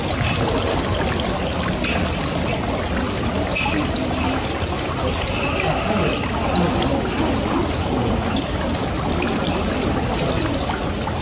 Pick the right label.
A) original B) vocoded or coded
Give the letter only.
A